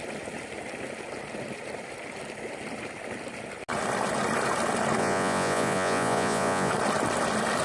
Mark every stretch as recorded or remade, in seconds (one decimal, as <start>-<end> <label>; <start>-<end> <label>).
0.0-5.0 recorded; 5.0-6.7 remade; 6.7-7.6 recorded